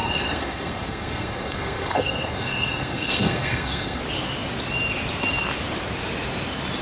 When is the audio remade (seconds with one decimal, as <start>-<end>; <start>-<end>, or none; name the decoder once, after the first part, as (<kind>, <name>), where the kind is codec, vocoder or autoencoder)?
0.0-4.0 (codec, SNAC)